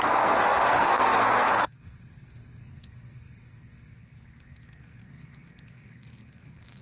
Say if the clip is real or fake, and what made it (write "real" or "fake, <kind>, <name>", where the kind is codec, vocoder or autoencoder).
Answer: fake, codec, SNAC